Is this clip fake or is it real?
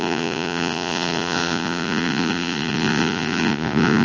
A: fake